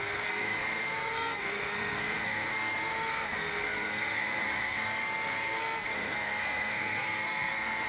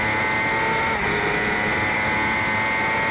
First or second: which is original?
second